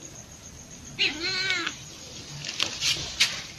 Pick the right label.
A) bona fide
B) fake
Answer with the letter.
B